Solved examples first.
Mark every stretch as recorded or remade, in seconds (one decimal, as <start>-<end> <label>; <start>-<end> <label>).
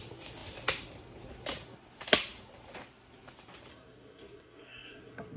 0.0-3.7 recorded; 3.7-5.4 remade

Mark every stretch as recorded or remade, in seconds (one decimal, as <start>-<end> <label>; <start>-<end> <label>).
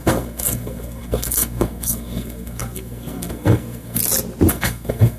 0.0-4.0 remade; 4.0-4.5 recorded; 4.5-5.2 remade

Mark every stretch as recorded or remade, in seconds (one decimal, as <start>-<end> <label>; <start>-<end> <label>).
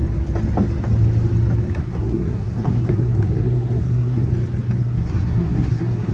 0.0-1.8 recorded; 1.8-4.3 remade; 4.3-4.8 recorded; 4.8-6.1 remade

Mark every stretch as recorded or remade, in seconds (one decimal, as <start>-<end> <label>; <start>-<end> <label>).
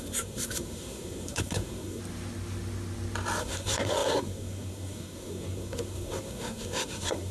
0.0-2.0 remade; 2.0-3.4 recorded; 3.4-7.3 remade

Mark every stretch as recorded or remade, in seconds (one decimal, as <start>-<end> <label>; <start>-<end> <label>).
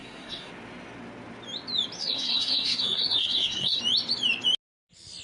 0.0-0.5 remade; 0.5-2.0 recorded; 2.0-3.8 remade; 3.8-5.2 recorded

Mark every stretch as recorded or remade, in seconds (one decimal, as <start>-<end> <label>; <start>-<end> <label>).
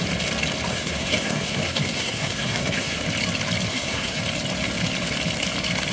0.0-0.7 recorded; 0.7-3.0 remade; 3.0-3.7 recorded; 3.7-4.2 remade; 4.2-5.9 recorded